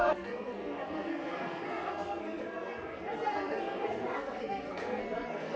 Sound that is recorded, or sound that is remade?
remade